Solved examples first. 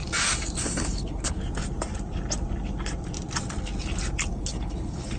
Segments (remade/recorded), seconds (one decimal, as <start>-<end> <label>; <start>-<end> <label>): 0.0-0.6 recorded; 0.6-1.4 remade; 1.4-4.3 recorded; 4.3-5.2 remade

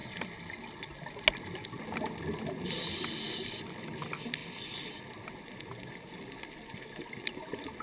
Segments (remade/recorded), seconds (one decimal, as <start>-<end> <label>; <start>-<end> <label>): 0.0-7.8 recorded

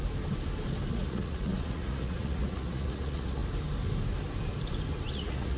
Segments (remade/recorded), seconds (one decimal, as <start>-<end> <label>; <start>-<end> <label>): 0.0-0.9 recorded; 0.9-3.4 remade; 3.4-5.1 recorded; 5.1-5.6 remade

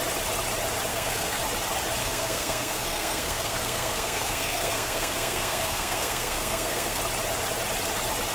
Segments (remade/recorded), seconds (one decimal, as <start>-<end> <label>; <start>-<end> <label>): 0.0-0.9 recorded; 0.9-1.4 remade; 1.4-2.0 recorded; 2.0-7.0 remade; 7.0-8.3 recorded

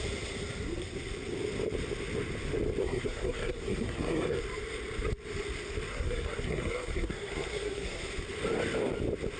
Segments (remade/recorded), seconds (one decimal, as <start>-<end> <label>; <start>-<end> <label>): 0.0-2.8 recorded; 2.8-4.4 remade; 4.4-5.9 recorded; 5.9-8.0 remade; 8.0-9.4 recorded

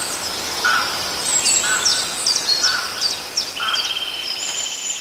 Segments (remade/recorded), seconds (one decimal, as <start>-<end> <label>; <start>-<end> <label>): 0.0-5.0 recorded

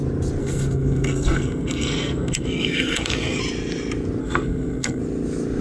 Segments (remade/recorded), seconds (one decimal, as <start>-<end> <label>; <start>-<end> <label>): 0.0-0.4 recorded; 0.4-3.4 remade; 3.4-4.2 recorded; 4.2-5.0 remade; 5.0-5.6 recorded

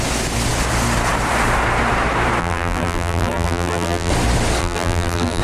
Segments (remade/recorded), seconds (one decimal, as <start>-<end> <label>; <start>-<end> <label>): 0.0-2.4 recorded; 2.4-4.1 remade; 4.1-4.6 recorded; 4.6-5.4 remade